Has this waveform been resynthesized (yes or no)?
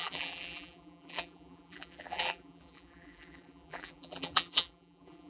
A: yes